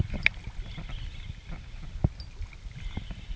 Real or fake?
real